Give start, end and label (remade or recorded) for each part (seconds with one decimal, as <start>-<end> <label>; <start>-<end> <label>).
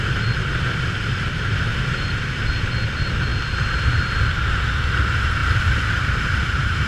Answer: 0.0-1.7 recorded; 1.7-2.4 remade; 2.4-5.4 recorded; 5.4-6.9 remade